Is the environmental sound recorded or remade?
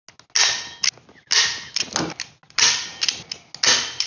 recorded